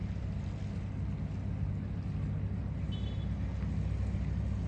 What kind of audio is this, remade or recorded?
recorded